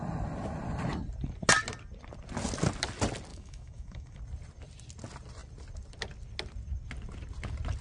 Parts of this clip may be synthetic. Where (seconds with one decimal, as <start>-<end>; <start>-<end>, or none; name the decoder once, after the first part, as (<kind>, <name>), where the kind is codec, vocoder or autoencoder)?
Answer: 3.3-4.2 (autoencoder, DAC-VAE)